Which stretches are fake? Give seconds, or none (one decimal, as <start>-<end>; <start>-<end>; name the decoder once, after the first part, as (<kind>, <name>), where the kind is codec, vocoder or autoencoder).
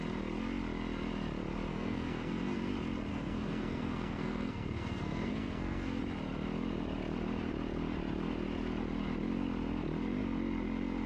1.7-2.7 (codec, SNAC); 3.1-6.0